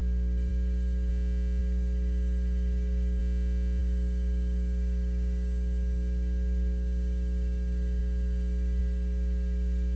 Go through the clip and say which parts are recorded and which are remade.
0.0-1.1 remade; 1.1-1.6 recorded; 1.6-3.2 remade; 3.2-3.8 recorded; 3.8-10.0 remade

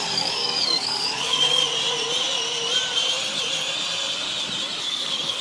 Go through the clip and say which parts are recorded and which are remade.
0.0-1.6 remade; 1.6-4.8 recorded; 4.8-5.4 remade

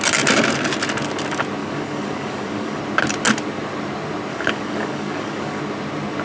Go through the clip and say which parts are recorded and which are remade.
0.0-1.6 recorded; 1.6-2.8 remade; 2.8-4.3 recorded; 4.3-5.6 remade; 5.6-6.2 recorded

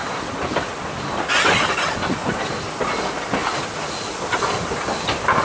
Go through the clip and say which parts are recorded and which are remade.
0.0-5.4 recorded

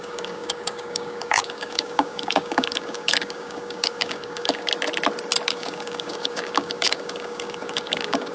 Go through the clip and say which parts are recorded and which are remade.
0.0-4.7 remade; 4.7-5.5 recorded; 5.5-8.3 remade

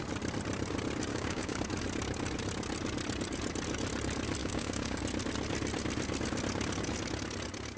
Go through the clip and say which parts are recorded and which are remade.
0.0-1.1 recorded; 1.1-1.6 remade; 1.6-4.4 recorded; 4.4-5.0 remade; 5.0-7.8 recorded

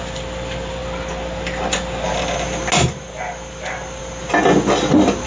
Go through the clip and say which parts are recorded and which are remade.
0.0-5.3 recorded